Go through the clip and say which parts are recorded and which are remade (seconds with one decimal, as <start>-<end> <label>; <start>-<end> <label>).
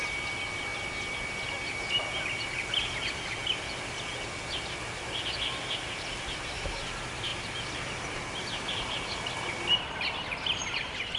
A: 0.0-11.2 recorded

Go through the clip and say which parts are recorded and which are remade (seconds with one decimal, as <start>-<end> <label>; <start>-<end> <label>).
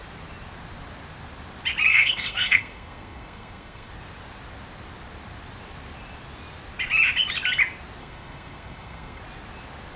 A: 0.0-1.9 recorded; 1.9-3.9 remade; 3.9-8.0 recorded; 8.0-9.2 remade; 9.2-10.0 recorded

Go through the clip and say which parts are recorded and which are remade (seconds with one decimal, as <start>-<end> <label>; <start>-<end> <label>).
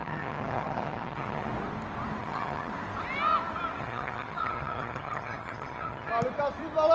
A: 0.0-1.5 remade; 1.5-2.2 recorded; 2.2-2.7 remade; 2.7-3.8 recorded; 3.8-6.1 remade; 6.1-6.9 recorded